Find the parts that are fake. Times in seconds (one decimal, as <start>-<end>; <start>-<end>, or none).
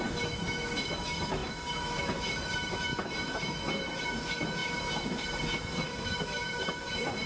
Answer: 0.0-7.3